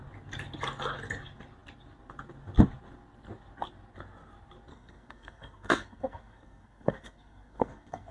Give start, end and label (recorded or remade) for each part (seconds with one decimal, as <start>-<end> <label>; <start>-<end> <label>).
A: 0.0-4.7 recorded; 4.7-8.1 remade